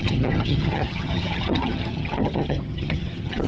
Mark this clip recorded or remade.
remade